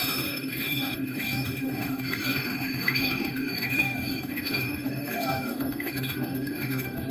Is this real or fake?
fake